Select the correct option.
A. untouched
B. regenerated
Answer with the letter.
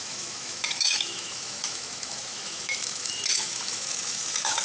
B